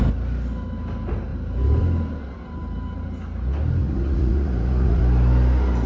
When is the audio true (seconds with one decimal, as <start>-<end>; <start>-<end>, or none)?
0.0-3.8; 5.0-5.9